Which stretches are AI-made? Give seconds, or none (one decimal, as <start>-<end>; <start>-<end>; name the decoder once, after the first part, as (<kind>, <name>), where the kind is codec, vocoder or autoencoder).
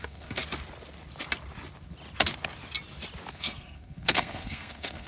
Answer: 0.0-0.4 (codec, SNAC); 3.3-5.1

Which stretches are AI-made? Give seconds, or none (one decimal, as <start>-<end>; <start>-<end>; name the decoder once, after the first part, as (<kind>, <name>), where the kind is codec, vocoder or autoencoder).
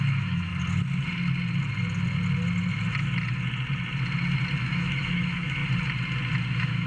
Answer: 0.0-0.5 (autoencoder, DAC-VAE); 4.6-5.6; 6.5-6.9